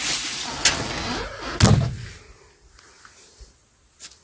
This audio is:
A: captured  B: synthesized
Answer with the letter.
A